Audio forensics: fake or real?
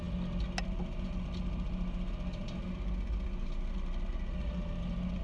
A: real